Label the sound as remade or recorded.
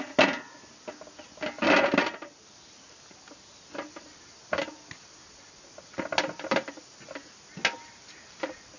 recorded